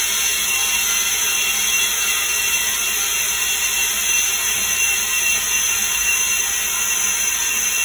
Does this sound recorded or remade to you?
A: remade